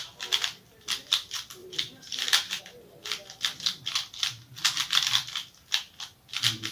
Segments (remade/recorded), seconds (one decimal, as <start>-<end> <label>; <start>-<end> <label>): 0.0-1.6 recorded; 1.6-2.6 remade; 2.6-6.7 recorded